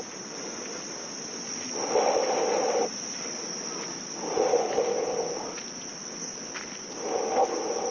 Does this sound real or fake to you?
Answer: real